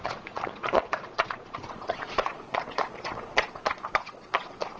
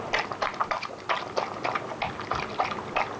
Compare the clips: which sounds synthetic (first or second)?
first